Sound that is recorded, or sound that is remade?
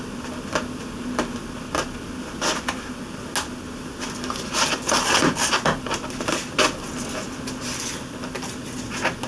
recorded